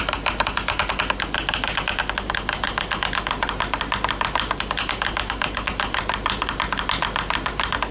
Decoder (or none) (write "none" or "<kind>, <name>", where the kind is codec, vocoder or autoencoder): none